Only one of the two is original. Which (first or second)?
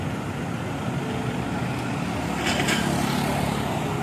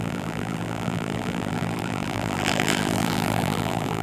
first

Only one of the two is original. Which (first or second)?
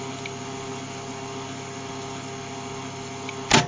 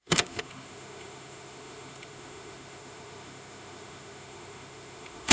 first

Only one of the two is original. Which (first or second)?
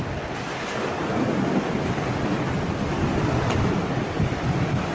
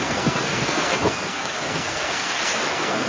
first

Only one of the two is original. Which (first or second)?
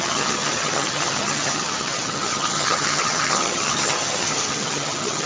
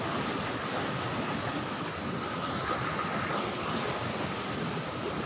second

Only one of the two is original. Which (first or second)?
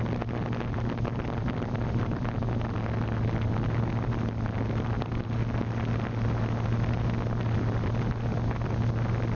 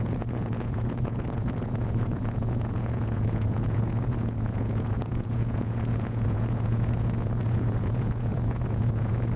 first